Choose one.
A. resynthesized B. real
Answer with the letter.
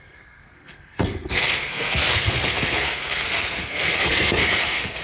A